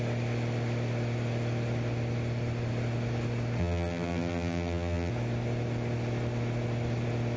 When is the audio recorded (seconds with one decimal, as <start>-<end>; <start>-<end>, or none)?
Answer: 0.0-3.6; 5.1-7.4